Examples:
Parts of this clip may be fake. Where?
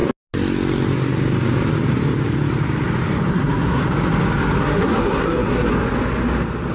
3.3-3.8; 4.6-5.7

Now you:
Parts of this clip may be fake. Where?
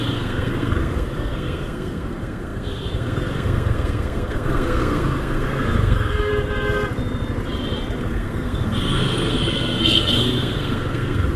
0.0-6.3; 8.0-11.4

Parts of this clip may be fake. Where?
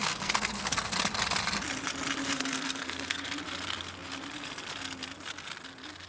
0.0-0.7; 2.3-3.4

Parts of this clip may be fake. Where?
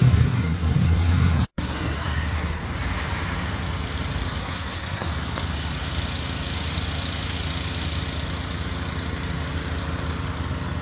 0.0-2.6; 4.4-5.1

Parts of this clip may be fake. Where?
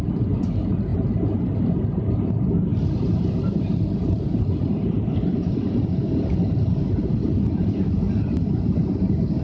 none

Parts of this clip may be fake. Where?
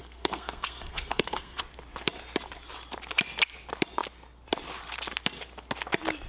0.0-1.6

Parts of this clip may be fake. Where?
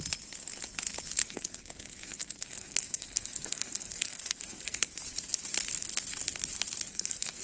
1.2-5.0; 6.9-7.4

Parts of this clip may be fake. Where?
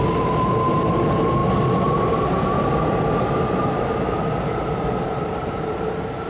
none